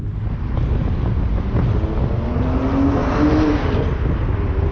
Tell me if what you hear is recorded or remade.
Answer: recorded